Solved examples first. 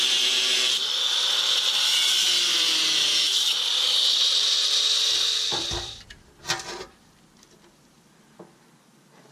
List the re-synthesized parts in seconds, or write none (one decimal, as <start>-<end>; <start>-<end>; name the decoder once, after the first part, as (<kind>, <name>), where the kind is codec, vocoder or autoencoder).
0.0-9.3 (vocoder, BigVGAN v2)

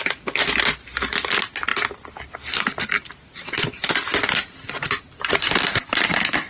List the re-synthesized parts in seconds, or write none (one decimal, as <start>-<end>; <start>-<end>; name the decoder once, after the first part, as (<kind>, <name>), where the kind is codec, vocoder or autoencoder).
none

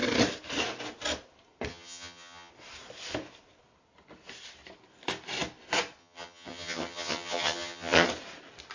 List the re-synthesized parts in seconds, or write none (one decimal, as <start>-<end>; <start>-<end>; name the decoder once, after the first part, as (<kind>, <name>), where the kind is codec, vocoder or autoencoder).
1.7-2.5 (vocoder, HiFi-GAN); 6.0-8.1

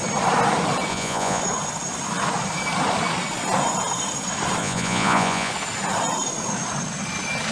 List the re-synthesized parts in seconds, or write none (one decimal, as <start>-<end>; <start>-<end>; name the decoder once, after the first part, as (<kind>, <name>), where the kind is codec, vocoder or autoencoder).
0.9-1.4 (vocoder, Vocos); 4.6-5.5

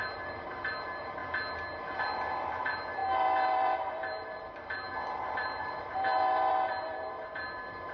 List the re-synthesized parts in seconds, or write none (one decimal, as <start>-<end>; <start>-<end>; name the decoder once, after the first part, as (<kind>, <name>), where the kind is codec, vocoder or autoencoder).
0.0-1.2 (vocoder, BigVGAN v2); 2.0-7.9